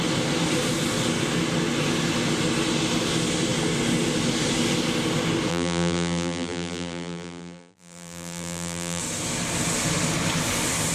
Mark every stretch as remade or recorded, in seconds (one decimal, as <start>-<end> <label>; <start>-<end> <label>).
0.0-5.5 recorded; 5.5-9.0 remade; 9.0-10.9 recorded